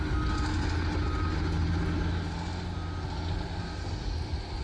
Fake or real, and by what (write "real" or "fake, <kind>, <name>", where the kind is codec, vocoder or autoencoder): real